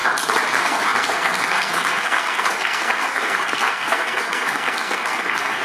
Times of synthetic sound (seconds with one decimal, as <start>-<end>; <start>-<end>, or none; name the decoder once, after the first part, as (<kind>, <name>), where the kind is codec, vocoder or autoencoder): 0.5-5.6 (codec, SNAC)